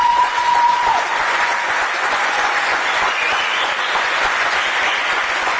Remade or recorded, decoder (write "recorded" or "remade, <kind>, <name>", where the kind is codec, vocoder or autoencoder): remade, vocoder, Vocos